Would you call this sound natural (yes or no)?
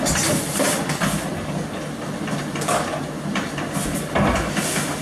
yes